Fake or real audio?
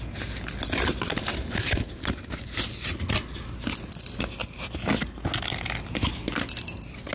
real